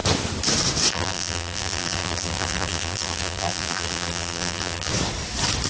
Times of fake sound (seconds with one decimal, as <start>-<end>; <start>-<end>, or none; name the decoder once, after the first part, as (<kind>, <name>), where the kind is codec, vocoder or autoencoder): 0.9-4.9 (vocoder, BigVGAN v2)